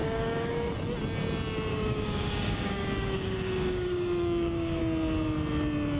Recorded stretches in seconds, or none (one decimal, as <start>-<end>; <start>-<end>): 0.7-1.7; 4.8-6.0